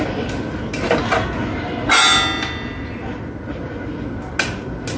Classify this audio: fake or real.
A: real